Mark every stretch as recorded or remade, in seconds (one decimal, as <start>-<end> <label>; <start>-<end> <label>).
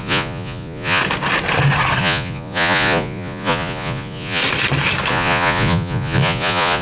0.0-1.0 remade; 1.0-2.0 recorded; 2.0-4.4 remade; 4.4-5.1 recorded; 5.1-6.8 remade